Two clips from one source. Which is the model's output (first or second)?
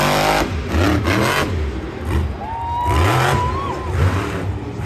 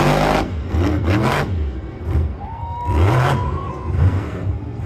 second